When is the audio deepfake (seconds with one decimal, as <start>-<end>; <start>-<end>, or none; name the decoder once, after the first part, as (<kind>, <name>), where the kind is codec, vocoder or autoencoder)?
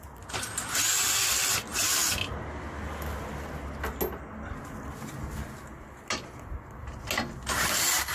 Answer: none